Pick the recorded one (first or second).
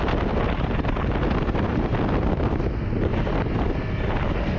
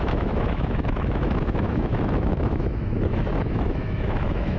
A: first